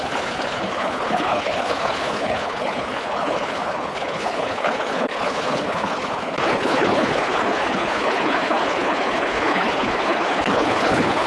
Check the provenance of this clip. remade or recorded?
remade